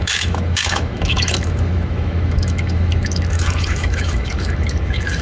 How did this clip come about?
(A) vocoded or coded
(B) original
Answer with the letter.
A